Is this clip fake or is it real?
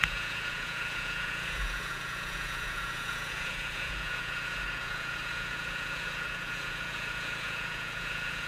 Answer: fake